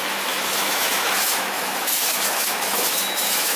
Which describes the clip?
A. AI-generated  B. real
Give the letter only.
A